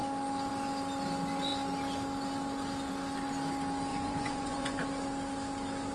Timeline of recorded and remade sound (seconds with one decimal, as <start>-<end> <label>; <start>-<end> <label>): 0.0-3.9 recorded; 3.9-4.8 remade; 4.8-5.9 recorded